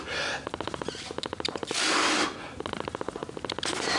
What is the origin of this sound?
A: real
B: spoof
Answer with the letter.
A